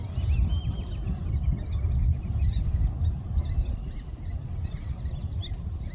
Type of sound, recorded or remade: recorded